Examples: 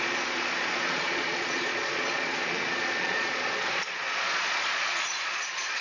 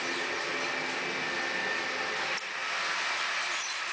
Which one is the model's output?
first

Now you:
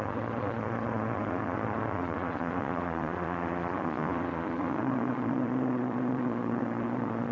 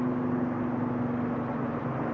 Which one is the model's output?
first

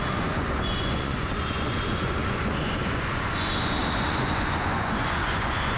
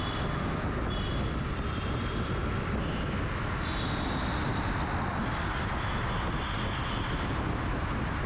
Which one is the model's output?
first